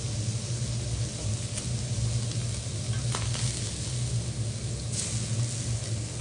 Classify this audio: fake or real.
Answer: real